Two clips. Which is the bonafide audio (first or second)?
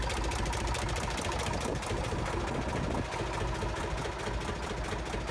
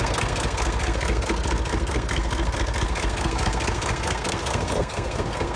first